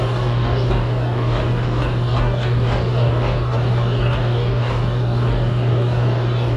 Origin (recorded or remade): remade